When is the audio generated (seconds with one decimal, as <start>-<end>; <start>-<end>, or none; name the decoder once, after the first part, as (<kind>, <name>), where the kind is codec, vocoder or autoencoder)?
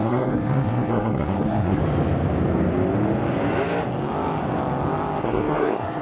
0.0-1.8 (codec, SNAC); 5.2-6.0